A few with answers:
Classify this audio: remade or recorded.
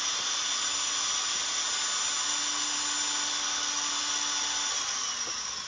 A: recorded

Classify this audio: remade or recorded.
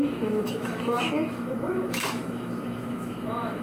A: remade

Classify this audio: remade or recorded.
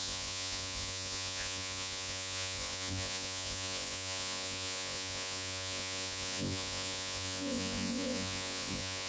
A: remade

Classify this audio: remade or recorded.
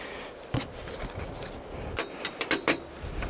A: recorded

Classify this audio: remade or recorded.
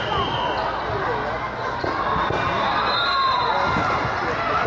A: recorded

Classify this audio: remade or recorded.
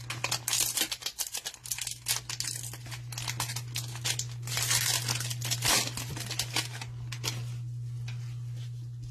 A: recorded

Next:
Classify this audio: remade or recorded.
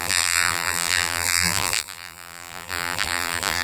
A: remade